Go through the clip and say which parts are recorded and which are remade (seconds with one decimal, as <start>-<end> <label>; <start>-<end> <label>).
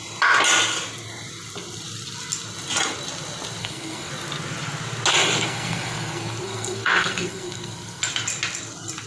0.0-3.6 recorded; 3.6-4.1 remade; 4.1-5.1 recorded; 5.1-8.0 remade; 8.0-9.1 recorded